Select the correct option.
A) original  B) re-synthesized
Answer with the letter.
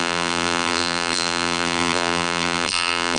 B